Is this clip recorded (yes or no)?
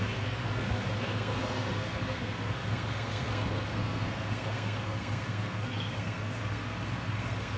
no